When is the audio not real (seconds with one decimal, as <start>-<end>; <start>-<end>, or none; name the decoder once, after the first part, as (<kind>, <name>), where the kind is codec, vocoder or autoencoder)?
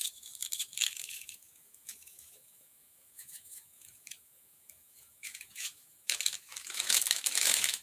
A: 0.0-7.8 (autoencoder, DAC-VAE)